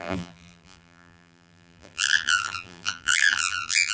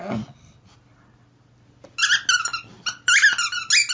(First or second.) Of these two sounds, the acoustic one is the second